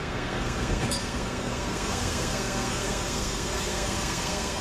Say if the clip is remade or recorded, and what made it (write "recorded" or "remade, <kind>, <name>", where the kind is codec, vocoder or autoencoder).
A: remade, codec, SNAC